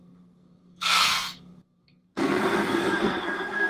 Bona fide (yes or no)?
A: no